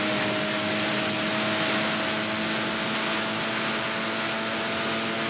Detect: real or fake real